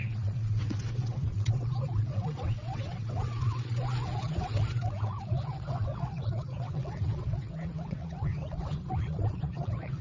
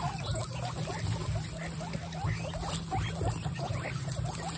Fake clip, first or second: first